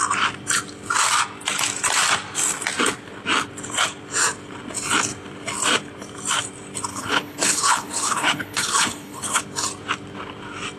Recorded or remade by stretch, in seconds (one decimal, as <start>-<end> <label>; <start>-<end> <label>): 0.0-6.9 recorded; 6.9-9.4 remade; 9.4-10.8 recorded